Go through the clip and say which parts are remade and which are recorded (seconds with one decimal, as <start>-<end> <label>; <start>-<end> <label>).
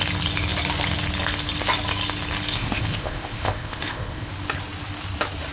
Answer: 0.0-2.5 recorded; 2.5-4.3 remade; 4.3-5.5 recorded